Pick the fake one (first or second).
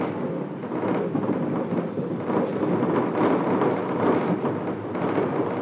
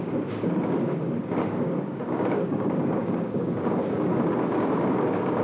second